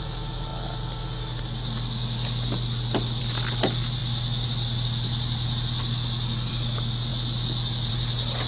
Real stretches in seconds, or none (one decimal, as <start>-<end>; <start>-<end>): 0.0-8.5